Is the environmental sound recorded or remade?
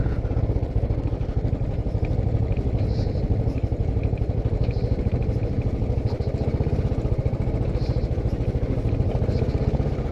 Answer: recorded